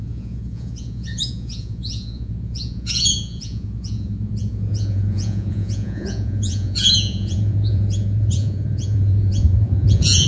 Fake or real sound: fake